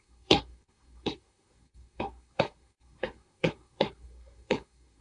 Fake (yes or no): yes